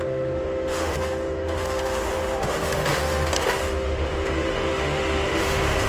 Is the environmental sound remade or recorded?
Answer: remade